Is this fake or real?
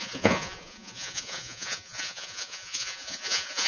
fake